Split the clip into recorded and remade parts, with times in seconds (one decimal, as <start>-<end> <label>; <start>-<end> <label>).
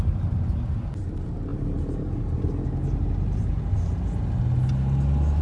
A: 0.0-5.4 recorded